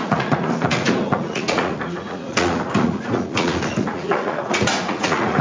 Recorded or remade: remade